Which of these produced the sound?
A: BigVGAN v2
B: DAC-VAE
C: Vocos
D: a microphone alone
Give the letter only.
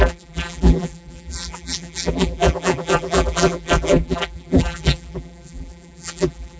A